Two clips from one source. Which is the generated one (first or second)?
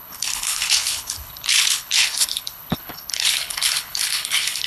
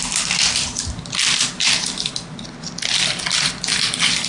first